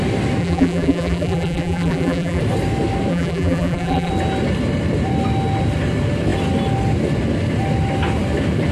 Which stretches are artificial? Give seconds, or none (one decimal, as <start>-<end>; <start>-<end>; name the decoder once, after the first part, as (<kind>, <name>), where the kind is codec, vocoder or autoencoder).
0.4-2.4 (vocoder, BigVGAN v2); 3.1-4.1